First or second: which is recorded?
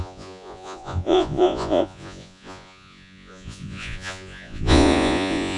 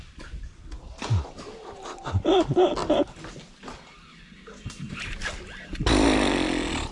second